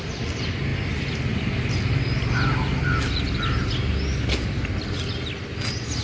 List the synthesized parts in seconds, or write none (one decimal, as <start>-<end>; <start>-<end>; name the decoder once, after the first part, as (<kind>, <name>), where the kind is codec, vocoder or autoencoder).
none